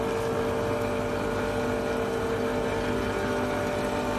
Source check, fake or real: real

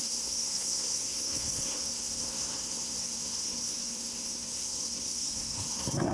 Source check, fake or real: fake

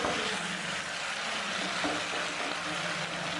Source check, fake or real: real